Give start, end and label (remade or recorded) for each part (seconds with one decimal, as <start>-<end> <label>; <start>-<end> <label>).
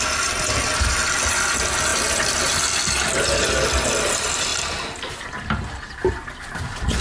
0.0-4.5 recorded; 4.5-5.7 remade; 5.7-7.0 recorded